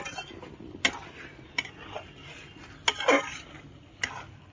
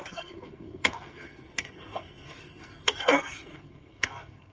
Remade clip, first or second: second